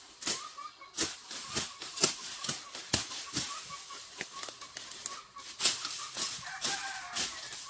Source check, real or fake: real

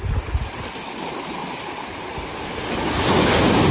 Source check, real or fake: real